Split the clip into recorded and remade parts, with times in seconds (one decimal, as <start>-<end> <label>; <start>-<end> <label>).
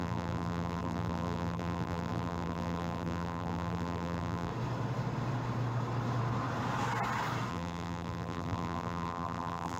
0.0-4.5 remade; 4.5-7.5 recorded; 7.5-9.8 remade